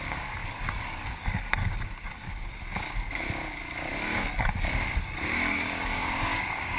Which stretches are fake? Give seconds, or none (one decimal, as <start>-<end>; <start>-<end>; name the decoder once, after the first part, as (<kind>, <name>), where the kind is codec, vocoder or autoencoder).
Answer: 0.0-6.8 (codec, DAC)